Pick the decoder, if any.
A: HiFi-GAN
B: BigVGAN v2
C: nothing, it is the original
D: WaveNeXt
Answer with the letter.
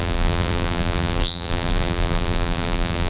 B